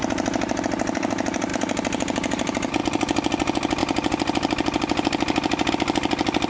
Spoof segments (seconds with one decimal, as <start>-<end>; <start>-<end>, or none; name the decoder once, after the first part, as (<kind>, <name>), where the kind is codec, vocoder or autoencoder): 0.0-0.6 (vocoder, BigVGAN v2); 1.5-2.8; 3.8-5.7